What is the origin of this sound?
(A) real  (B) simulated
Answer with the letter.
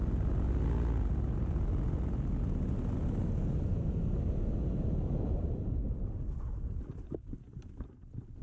A